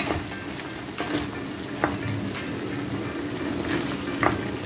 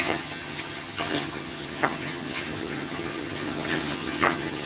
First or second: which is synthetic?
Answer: second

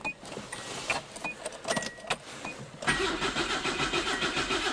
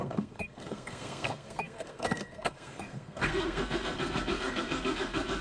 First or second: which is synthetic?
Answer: second